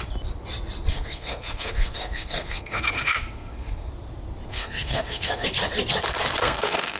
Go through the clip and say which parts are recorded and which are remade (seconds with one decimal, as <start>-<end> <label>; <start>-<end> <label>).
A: 0.0-0.9 recorded; 0.9-3.9 remade; 3.9-4.5 recorded; 4.5-5.5 remade; 5.5-6.4 recorded; 6.4-7.0 remade